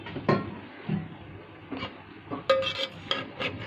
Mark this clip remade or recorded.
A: recorded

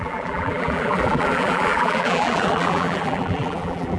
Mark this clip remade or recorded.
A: remade